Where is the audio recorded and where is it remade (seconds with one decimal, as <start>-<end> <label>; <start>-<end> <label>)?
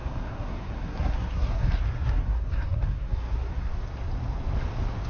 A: 0.0-3.7 remade; 3.7-5.1 recorded